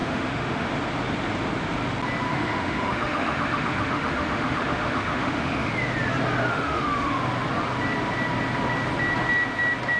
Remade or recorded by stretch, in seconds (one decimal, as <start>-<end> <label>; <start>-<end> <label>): 0.0-0.7 remade; 0.7-2.3 recorded; 2.3-5.7 remade; 5.7-6.5 recorded; 6.5-7.2 remade; 7.2-10.0 recorded